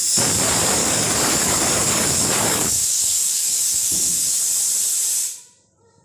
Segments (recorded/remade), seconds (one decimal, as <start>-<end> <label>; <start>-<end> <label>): 0.0-0.8 recorded; 0.8-4.4 remade; 4.4-6.0 recorded